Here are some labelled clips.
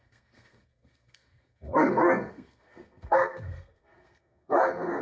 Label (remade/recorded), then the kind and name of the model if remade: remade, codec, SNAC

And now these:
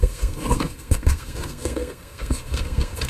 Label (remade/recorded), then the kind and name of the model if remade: remade, codec, SNAC